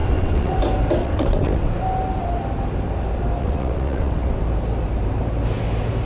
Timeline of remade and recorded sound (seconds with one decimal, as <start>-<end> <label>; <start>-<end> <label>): 0.0-0.6 remade; 0.6-1.0 recorded; 1.0-1.7 remade; 1.7-3.4 recorded; 3.4-4.3 remade; 4.3-6.1 recorded